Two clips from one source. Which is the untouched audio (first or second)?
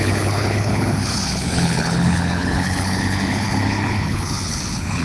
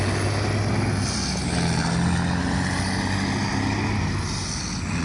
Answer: second